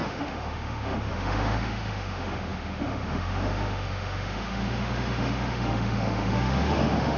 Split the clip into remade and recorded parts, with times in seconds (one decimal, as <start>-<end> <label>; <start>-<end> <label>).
0.0-7.2 remade